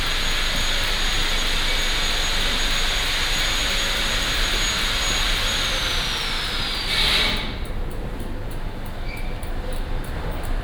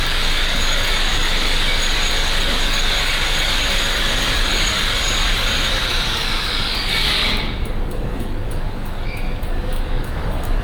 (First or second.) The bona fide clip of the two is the first